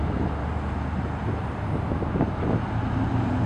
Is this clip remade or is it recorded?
remade